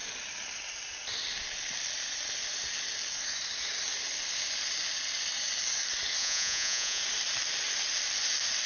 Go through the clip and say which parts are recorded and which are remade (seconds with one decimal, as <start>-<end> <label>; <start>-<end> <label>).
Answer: 0.0-6.2 recorded; 6.2-7.0 remade; 7.0-8.7 recorded